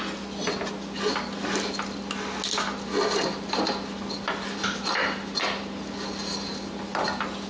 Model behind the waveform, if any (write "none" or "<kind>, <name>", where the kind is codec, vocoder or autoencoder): none